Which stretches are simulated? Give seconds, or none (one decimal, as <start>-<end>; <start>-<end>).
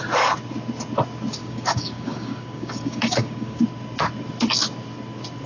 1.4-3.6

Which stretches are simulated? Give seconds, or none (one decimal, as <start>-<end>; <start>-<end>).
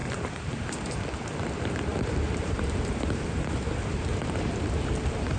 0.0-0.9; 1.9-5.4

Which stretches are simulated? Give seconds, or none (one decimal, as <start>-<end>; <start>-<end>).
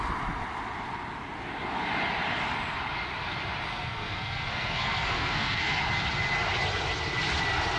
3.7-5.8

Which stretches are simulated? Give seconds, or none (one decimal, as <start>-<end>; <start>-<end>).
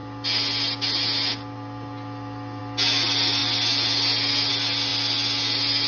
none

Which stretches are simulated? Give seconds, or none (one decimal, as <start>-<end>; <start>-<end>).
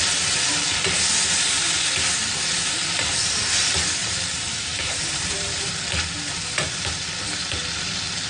4.0-5.7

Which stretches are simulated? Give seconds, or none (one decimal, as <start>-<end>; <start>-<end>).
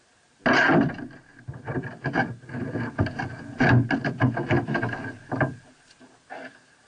none